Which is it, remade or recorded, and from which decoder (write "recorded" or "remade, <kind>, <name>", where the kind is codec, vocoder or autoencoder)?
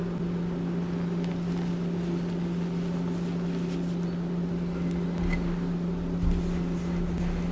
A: recorded